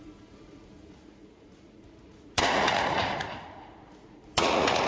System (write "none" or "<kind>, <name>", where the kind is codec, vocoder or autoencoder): vocoder, Vocos